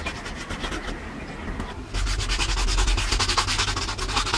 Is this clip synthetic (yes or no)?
no